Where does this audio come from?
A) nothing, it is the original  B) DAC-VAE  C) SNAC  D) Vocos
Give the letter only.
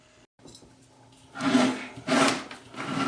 A